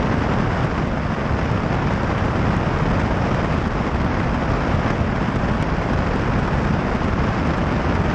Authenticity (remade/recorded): recorded